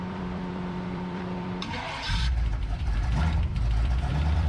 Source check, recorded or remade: remade